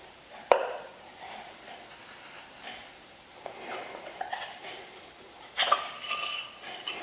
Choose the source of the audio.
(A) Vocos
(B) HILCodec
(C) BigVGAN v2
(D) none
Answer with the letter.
C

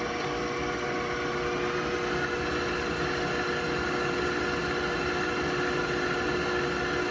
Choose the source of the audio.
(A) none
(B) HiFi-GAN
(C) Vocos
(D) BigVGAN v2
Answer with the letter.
A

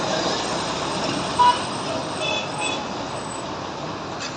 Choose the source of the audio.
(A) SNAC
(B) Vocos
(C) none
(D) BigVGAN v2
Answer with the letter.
C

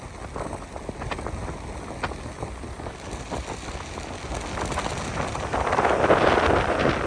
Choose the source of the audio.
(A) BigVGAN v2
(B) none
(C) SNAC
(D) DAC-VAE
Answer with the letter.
B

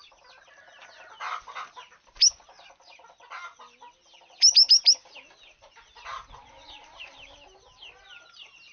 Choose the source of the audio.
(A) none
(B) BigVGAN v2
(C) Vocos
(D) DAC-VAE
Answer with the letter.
A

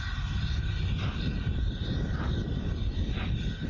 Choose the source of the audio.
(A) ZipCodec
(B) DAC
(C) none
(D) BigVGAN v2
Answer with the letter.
C